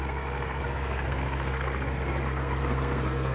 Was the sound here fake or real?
fake